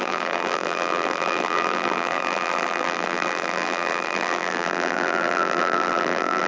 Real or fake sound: fake